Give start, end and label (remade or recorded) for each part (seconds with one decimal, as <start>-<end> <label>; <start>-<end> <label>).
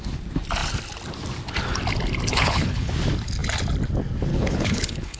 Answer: 0.0-2.3 recorded; 2.3-2.9 remade; 2.9-4.3 recorded; 4.3-5.2 remade